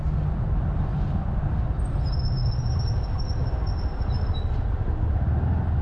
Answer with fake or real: real